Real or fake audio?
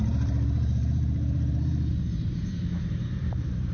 fake